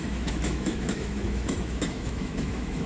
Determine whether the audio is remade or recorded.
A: remade